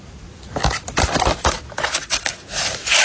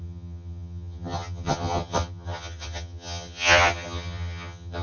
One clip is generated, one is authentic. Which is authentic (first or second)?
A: first